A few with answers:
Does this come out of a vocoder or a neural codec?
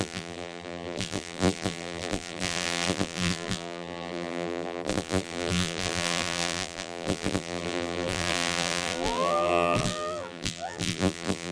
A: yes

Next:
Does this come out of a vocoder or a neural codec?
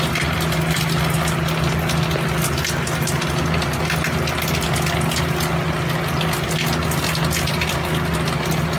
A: no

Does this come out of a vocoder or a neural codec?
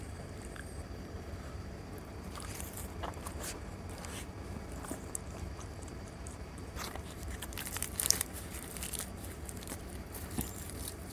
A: yes